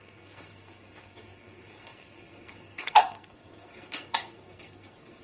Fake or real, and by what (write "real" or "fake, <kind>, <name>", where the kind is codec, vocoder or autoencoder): fake, codec, SNAC